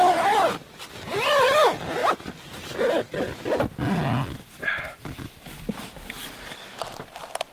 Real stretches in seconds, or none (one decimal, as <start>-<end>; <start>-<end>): 0.0-7.5